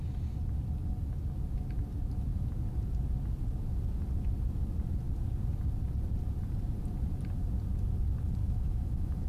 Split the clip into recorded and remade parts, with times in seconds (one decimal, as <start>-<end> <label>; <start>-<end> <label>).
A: 0.0-8.4 recorded; 8.4-9.3 remade